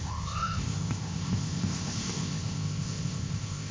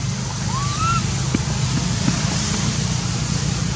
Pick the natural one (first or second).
second